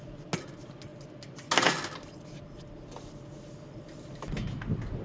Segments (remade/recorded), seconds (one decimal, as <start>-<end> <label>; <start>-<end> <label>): 0.0-5.0 recorded